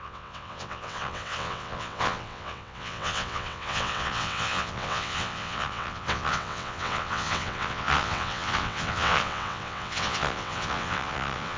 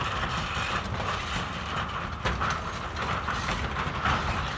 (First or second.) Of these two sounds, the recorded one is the second